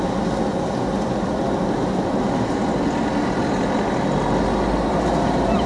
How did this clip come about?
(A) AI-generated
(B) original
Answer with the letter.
B